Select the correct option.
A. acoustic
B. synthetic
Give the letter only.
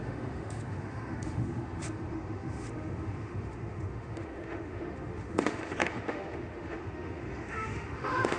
B